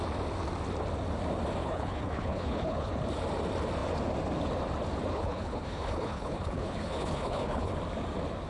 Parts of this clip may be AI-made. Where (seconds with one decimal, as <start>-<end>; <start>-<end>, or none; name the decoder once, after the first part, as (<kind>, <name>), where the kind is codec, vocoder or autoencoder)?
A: 1.6-2.9 (codec, HILCodec); 5.1-7.7

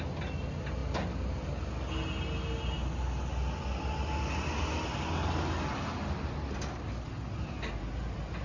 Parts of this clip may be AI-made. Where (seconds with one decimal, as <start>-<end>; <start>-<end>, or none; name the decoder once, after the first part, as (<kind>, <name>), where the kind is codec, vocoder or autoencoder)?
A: none

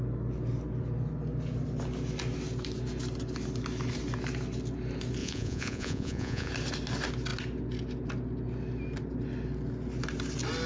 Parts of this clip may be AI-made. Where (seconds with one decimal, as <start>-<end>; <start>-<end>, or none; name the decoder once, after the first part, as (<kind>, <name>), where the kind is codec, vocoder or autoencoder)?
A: 5.2-6.5 (vocoder, Vocos)